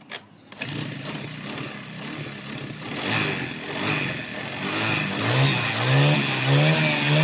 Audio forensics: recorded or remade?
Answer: recorded